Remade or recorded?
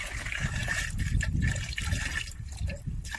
recorded